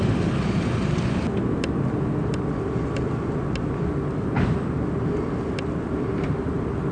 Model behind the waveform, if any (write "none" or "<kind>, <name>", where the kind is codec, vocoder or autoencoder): none